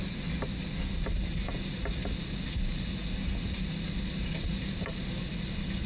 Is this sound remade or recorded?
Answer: recorded